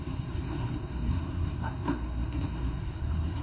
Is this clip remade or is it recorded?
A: remade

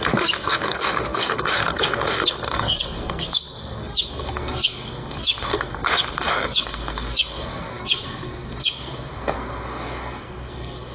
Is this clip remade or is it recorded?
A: remade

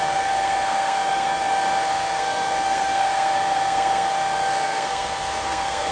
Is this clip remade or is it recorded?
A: remade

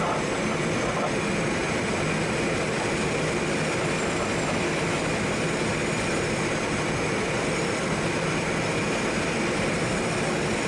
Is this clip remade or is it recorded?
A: recorded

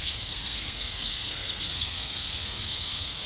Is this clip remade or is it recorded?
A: remade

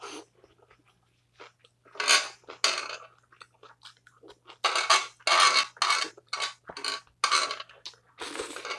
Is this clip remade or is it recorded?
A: recorded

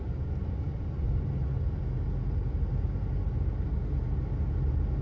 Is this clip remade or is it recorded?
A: recorded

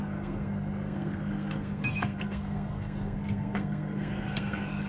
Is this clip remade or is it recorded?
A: remade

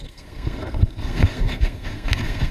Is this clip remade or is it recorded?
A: remade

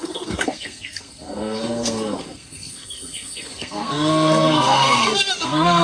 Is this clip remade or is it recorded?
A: remade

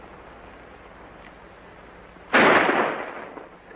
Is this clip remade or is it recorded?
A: recorded